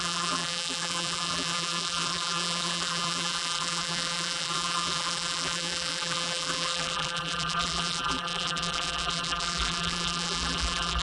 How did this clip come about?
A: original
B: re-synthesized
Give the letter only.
B